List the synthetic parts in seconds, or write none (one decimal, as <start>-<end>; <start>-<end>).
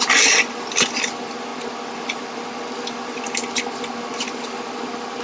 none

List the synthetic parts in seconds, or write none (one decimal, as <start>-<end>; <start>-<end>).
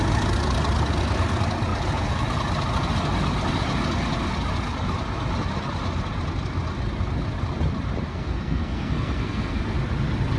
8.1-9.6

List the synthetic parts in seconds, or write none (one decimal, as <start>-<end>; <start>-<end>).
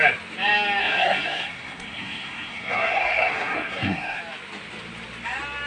0.8-4.2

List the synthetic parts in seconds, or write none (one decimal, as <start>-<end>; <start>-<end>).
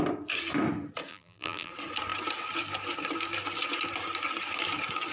1.1-1.7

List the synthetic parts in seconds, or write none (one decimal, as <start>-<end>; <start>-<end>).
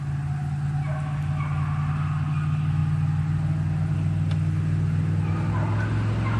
none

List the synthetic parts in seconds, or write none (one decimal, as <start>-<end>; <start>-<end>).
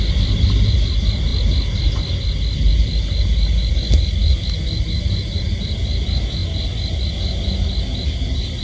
none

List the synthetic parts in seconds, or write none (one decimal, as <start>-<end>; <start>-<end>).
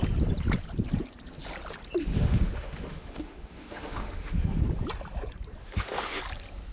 2.0-4.6; 5.6-6.2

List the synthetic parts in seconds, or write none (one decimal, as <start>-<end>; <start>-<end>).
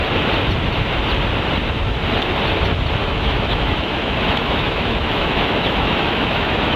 3.0-6.8